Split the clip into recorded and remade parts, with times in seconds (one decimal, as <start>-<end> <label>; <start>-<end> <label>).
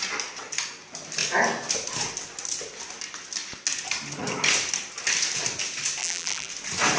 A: 0.0-6.0 recorded; 6.0-6.5 remade; 6.5-7.0 recorded